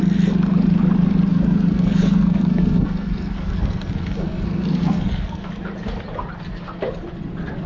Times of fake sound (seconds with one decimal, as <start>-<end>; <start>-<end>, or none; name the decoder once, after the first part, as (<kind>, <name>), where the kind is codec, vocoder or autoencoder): 1.3-5.5 (codec, SNAC)